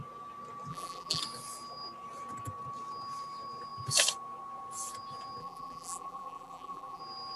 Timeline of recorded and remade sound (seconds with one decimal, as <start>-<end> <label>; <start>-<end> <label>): 0.0-0.7 recorded; 0.7-1.2 remade; 1.2-5.4 recorded; 5.4-7.0 remade; 7.0-7.4 recorded